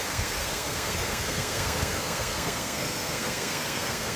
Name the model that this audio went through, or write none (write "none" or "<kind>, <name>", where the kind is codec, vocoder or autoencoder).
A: codec, SNAC